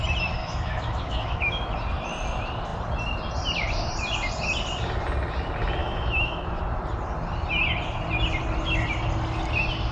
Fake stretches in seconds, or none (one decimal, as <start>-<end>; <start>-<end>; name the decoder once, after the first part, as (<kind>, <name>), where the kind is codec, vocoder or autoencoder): 0.4-1.7 (autoencoder, DAC-VAE); 5.8-6.6